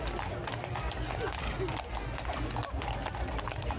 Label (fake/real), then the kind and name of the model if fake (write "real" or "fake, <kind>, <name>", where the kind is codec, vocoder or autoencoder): real